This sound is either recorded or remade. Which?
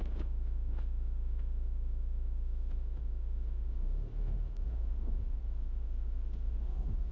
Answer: remade